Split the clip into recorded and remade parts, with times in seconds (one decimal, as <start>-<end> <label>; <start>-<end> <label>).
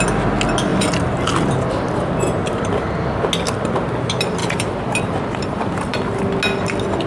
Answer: 0.0-2.4 recorded; 2.4-3.0 remade; 3.0-4.4 recorded; 4.4-6.2 remade; 6.2-7.1 recorded